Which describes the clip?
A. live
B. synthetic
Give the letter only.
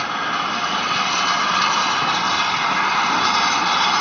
A